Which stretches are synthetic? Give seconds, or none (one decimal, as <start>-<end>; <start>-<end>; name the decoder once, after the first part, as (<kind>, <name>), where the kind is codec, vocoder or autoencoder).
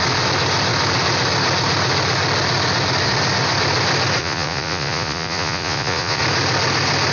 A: 4.2-6.2 (vocoder, Vocos)